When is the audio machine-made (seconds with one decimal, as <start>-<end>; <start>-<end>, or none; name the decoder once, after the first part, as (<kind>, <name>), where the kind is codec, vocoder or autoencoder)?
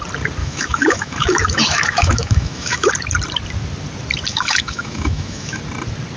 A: 0.4-2.9 (autoencoder, DAC-VAE); 4.3-5.6